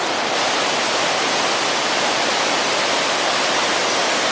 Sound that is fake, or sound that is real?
real